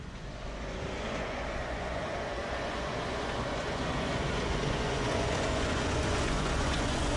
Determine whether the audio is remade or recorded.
remade